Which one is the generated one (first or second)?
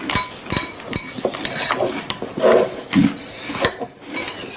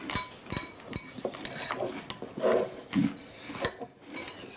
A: first